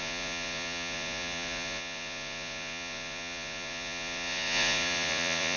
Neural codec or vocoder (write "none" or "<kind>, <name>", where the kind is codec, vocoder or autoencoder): vocoder, Vocos